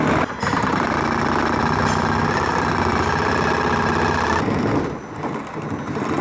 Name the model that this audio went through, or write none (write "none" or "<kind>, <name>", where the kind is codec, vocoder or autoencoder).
none